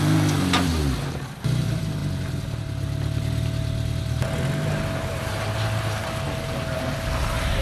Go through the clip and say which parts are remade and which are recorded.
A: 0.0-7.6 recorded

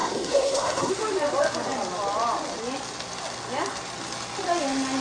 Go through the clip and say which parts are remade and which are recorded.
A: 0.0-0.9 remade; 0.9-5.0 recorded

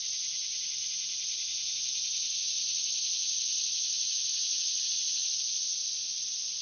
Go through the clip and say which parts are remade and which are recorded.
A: 0.0-0.8 remade; 0.8-4.8 recorded; 4.8-5.2 remade; 5.2-5.8 recorded; 5.8-6.6 remade